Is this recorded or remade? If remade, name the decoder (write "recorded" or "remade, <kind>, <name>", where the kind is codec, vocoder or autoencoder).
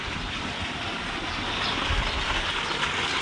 recorded